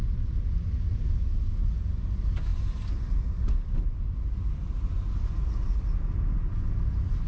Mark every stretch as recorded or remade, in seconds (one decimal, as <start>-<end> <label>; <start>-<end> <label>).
0.0-7.3 recorded